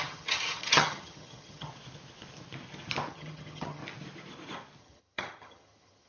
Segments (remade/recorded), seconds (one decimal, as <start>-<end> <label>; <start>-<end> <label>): 0.0-1.7 remade; 1.7-3.1 recorded; 3.1-3.8 remade; 3.8-4.8 recorded; 4.8-6.1 remade